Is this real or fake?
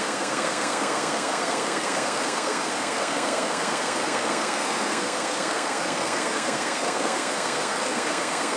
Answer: fake